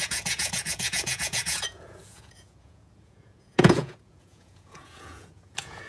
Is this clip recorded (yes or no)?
no